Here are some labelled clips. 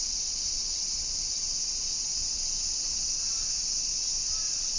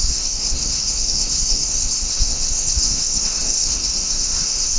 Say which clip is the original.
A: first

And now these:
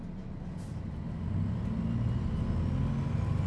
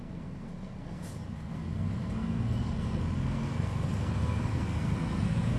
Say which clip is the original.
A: first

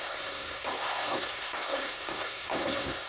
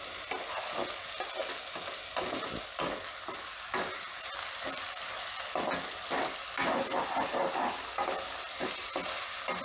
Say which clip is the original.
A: second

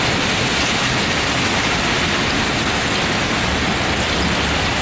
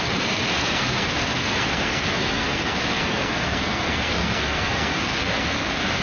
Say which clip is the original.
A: first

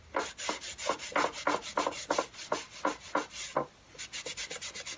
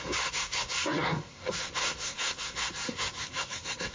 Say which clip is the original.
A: first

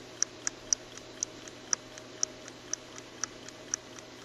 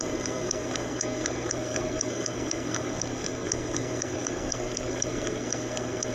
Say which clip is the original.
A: first